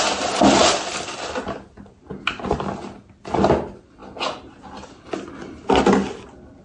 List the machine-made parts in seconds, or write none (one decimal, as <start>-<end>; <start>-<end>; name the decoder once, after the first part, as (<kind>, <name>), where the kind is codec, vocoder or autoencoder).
none